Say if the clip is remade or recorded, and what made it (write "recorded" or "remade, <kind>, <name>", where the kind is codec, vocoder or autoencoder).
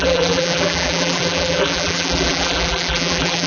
remade, vocoder, BigVGAN v2